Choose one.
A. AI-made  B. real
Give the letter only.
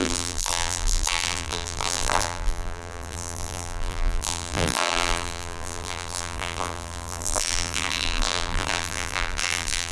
A